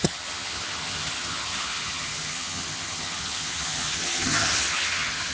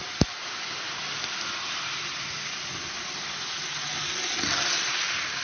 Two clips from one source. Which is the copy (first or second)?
first